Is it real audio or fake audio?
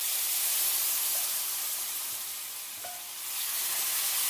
real